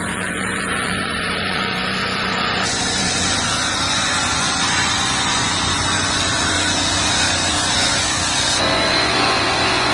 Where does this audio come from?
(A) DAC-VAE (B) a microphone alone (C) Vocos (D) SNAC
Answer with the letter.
C